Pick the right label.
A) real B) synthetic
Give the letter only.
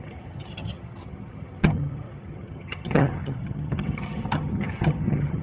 B